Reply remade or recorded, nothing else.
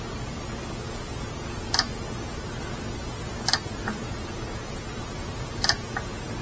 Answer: recorded